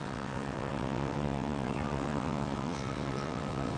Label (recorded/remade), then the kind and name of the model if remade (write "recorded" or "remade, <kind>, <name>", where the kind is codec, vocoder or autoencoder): remade, vocoder, WaveNeXt